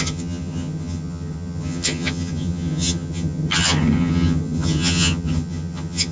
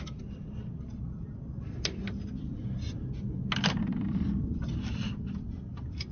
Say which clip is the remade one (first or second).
first